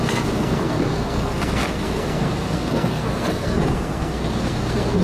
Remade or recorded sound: remade